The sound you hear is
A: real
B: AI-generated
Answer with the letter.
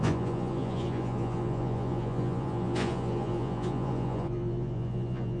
B